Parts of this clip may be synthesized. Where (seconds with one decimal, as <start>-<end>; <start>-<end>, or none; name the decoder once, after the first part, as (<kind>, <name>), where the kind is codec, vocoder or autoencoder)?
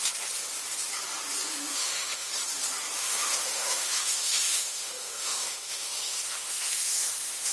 1.5-2.3 (autoencoder, DAC-VAE); 3.0-7.5